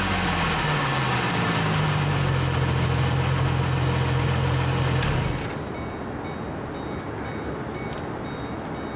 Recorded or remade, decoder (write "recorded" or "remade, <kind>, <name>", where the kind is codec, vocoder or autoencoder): recorded